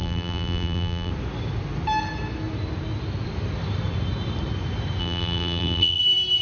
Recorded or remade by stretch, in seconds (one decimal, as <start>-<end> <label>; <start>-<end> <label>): 0.0-1.1 remade; 1.1-5.0 recorded; 5.0-6.0 remade; 6.0-6.4 recorded